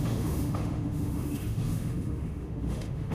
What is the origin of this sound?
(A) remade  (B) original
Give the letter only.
A